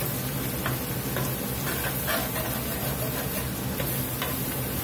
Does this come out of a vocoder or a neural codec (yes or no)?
no